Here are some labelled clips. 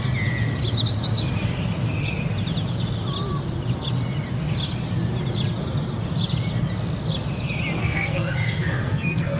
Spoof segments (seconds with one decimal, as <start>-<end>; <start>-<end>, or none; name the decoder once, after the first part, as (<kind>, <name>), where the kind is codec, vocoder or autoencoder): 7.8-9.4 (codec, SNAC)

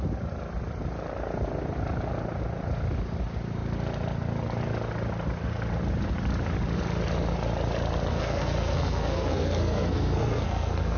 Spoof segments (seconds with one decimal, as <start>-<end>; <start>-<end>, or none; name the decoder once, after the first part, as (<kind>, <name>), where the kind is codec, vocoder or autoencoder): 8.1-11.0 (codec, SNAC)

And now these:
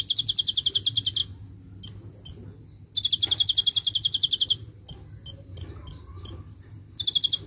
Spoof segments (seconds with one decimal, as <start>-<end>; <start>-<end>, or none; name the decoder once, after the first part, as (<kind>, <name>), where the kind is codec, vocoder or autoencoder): none

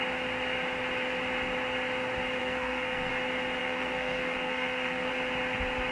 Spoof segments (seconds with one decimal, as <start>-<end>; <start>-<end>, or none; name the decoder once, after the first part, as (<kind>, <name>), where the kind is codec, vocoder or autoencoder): 2.4-3.1 (codec, SNAC); 3.6-5.1

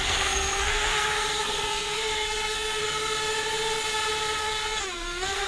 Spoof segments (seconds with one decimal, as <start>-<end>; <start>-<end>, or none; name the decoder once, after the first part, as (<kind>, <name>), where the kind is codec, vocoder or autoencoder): 0.0-2.8 (codec, SNAC); 4.4-5.5

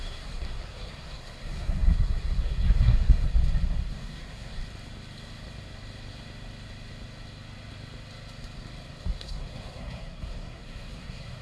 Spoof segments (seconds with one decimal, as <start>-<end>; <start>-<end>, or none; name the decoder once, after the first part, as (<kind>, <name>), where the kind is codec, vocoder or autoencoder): 0.0-3.3 (codec, SNAC); 3.9-4.6; 9.1-11.4

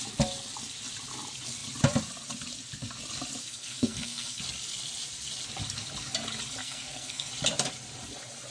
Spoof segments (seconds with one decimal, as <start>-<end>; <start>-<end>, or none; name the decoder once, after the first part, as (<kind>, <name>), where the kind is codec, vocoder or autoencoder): 3.4-4.4 (codec, SNAC); 6.6-7.3